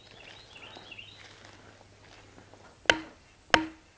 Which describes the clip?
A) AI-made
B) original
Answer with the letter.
B